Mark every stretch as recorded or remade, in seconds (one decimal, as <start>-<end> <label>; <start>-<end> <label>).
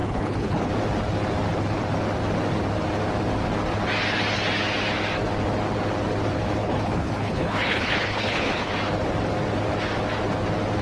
0.0-0.7 remade; 0.7-6.6 recorded; 6.6-8.7 remade; 8.7-10.8 recorded